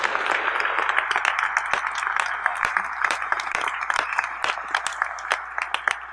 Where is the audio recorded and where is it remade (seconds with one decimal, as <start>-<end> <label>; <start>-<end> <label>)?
0.0-2.5 recorded; 2.5-4.7 remade; 4.7-6.1 recorded